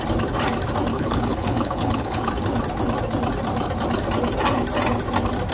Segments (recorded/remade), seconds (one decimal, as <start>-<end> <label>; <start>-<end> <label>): 0.0-0.9 recorded; 0.9-2.3 remade; 2.3-5.5 recorded